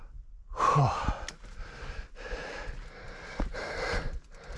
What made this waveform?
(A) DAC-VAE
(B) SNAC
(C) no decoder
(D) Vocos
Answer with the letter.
C